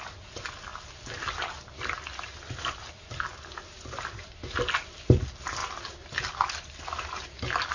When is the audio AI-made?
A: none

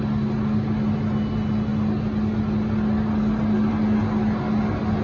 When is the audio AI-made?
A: none

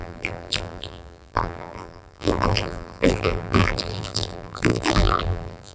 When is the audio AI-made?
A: 0.0-5.7 (vocoder, BigVGAN v2)

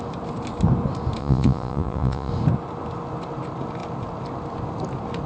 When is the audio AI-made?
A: 1.2-2.3 (vocoder, Vocos)

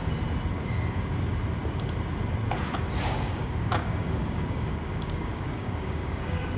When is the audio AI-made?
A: 3.1-6.6 (codec, DAC)

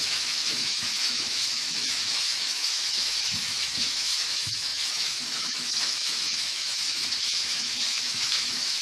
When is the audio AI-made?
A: 0.0-8.8 (autoencoder, DAC-VAE)